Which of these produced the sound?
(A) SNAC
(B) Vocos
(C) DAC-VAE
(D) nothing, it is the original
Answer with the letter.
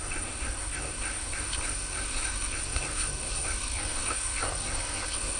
A